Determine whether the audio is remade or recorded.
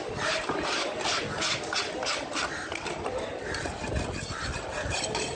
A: remade